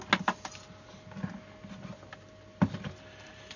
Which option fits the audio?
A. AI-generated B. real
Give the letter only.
B